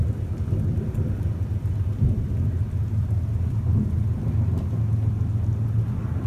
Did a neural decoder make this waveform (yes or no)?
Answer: no